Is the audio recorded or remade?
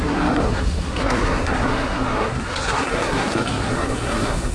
remade